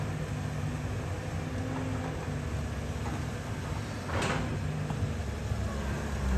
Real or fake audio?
real